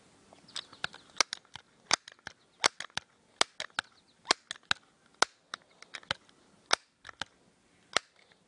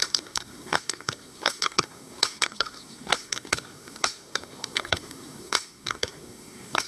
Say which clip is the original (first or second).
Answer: first